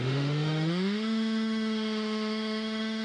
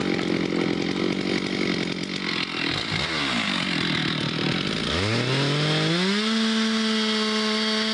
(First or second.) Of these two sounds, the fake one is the first